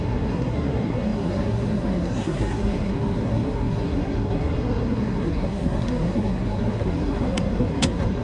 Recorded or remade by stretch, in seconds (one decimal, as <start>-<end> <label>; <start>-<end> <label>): 0.0-8.2 remade